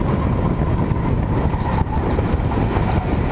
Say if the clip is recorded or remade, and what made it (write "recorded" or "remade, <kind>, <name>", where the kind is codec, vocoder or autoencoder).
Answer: recorded